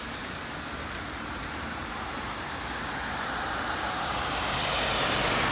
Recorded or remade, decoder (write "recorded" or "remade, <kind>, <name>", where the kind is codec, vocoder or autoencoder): remade, vocoder, BigVGAN v2